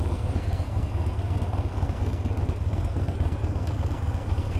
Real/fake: fake